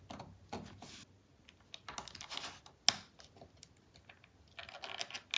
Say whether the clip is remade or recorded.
recorded